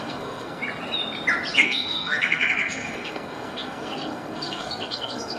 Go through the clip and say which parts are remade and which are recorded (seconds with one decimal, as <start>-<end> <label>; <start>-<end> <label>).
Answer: 0.0-0.6 remade; 0.6-1.5 recorded; 1.5-5.4 remade